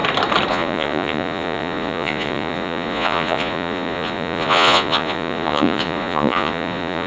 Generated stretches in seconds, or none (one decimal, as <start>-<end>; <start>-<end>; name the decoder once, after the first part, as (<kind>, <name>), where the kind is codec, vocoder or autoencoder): 0.5-7.1 (vocoder, Vocos)